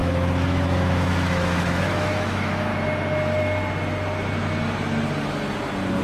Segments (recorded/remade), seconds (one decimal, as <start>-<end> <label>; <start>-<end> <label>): 0.0-2.7 remade; 2.7-6.0 recorded